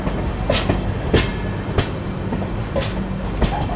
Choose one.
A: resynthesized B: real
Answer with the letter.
B